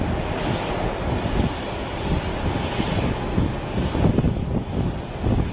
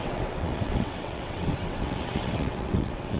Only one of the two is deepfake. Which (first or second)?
second